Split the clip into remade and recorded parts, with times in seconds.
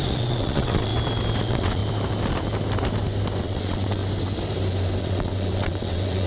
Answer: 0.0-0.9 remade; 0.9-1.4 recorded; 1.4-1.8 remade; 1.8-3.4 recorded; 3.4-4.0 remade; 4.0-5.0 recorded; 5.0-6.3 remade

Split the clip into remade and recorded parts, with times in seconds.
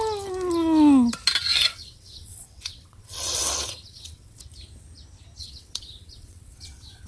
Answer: 0.0-1.7 recorded; 1.7-4.4 remade; 4.4-5.4 recorded; 5.4-7.1 remade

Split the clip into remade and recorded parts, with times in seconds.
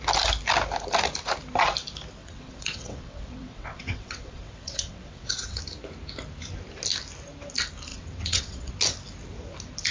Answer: 0.0-2.2 recorded; 2.2-5.6 remade; 5.6-7.9 recorded; 7.9-8.7 remade; 8.7-9.9 recorded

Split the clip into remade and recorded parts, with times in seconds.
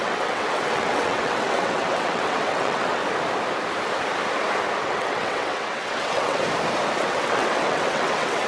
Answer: 0.0-3.0 remade; 3.0-4.8 recorded; 4.8-6.4 remade; 6.4-7.0 recorded; 7.0-8.5 remade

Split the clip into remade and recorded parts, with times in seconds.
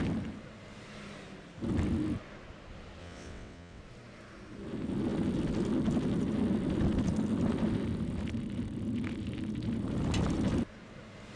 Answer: 0.0-3.0 recorded; 3.0-3.8 remade; 3.8-11.4 recorded